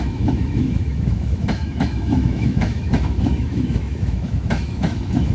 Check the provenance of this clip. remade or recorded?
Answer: remade